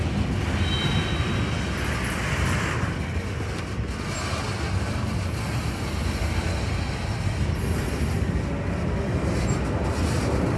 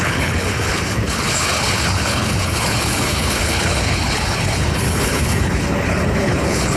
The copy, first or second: second